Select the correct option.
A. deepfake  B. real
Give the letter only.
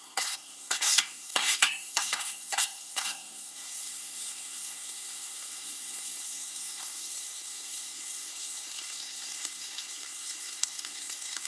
A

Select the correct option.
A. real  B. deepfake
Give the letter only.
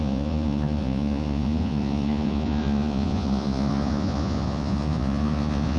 B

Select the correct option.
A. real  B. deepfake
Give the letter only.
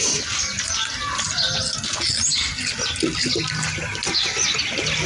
A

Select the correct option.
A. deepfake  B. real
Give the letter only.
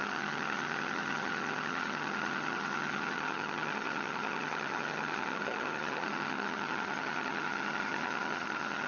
A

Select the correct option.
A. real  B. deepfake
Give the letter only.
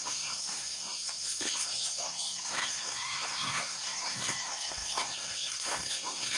B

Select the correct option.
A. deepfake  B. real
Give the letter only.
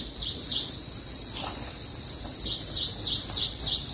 B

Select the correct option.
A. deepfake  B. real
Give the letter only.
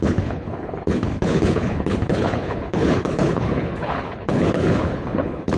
A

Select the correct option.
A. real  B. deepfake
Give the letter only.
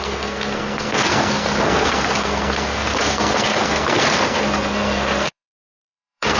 B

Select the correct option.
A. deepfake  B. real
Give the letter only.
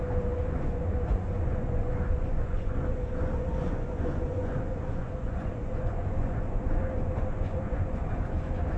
A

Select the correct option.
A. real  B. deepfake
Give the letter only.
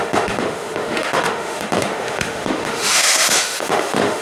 B